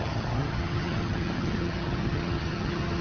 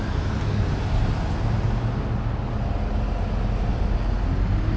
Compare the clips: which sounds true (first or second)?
second